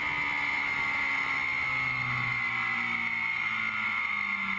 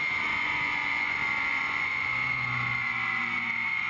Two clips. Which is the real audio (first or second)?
first